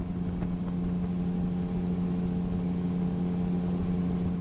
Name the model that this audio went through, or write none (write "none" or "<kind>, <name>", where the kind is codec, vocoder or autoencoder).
none